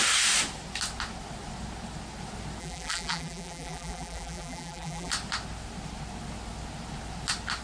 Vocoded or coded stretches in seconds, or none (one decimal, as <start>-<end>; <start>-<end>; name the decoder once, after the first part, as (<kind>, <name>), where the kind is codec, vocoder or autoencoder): 2.6-5.1 (vocoder, BigVGAN v2)